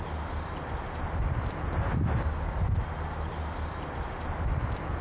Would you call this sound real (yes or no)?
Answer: yes